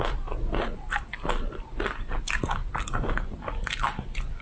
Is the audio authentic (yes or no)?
yes